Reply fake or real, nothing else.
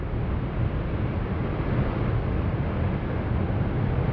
real